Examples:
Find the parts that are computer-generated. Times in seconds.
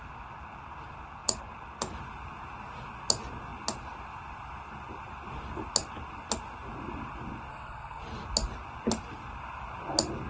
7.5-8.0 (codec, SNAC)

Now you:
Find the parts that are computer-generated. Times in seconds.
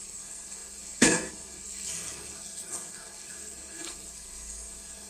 0.0-5.1 (codec, SNAC)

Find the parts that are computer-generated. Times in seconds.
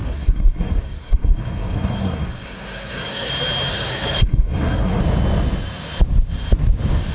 0.0-3.3 (codec, SNAC); 3.7-5.0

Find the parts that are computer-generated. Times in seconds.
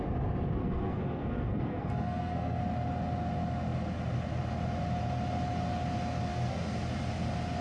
0.6-2.6 (codec, SNAC); 6.3-6.8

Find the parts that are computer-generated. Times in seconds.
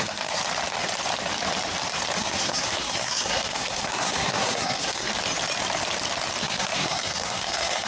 0.0-0.4 (codec, SNAC); 2.2-5.1; 6.4-7.9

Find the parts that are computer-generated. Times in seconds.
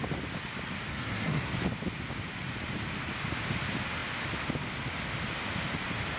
0.9-1.5 (codec, SNAC)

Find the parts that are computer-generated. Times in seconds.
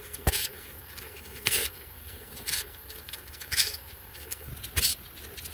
0.0-4.5 (codec, SNAC)